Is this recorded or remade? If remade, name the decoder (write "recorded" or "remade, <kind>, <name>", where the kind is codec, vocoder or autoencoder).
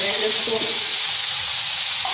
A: remade, vocoder, Vocos